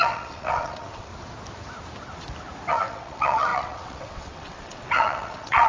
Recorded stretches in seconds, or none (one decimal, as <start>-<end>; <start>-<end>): 1.1-2.7